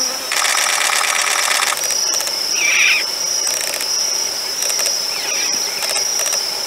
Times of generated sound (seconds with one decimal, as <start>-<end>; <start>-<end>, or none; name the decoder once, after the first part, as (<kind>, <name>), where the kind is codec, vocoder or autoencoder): none